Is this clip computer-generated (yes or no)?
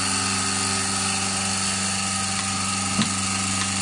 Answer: no